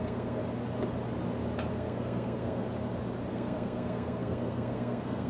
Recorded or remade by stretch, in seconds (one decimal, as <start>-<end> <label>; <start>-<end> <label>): 0.0-0.4 remade; 0.4-1.7 recorded; 1.7-2.6 remade; 2.6-3.3 recorded; 3.3-5.3 remade